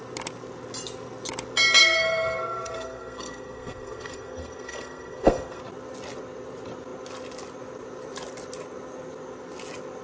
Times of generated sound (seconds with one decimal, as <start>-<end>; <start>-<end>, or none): 1.8-5.6